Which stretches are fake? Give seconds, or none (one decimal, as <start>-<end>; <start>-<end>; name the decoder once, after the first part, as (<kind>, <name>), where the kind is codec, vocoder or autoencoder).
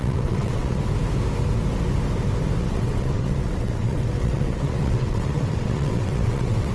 0.0-0.8 (vocoder, WaveNeXt); 2.6-6.7